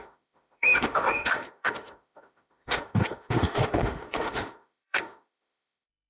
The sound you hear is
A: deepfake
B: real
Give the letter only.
A